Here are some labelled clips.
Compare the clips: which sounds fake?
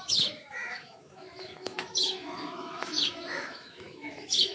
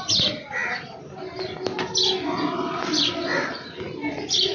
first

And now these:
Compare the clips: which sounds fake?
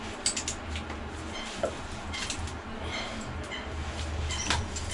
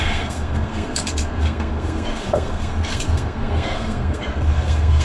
second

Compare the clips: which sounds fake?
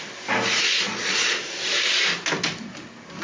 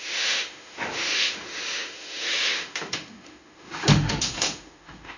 second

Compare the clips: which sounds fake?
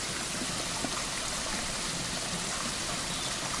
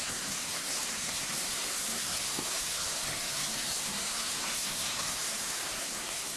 second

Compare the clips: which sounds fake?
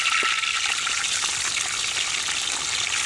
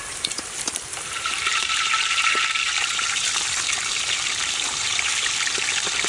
second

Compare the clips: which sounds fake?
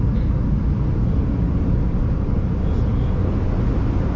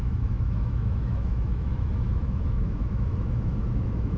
second